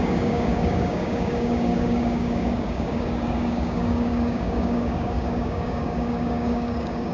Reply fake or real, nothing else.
fake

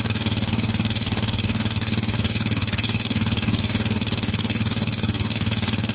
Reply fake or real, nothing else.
fake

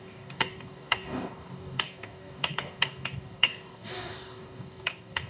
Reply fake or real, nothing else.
fake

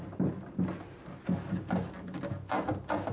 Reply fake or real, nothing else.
real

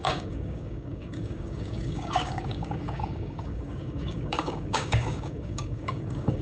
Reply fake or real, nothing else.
fake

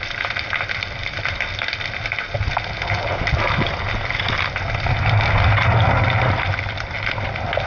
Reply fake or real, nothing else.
real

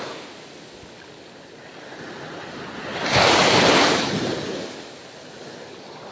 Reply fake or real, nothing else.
real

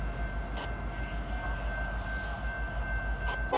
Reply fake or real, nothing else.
real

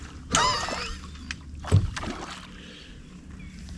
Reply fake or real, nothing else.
real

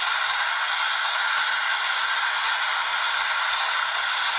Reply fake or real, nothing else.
real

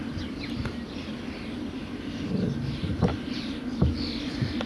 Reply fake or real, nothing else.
real